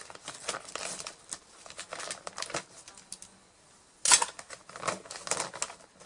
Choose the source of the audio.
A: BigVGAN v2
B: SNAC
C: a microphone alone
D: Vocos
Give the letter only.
C